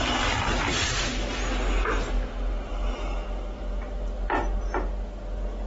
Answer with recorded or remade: recorded